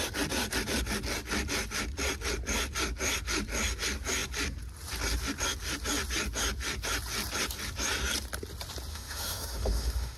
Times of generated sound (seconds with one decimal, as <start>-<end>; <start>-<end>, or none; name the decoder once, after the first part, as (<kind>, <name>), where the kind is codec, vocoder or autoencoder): 8.9-10.2 (autoencoder, DAC-VAE)